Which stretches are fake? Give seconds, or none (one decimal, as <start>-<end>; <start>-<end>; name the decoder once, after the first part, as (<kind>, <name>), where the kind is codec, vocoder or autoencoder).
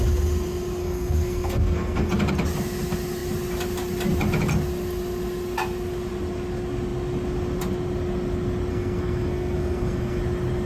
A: 0.8-2.1 (codec, SNAC); 8.7-10.2